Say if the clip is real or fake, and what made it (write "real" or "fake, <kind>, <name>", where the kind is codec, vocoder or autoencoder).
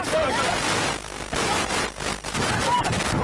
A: real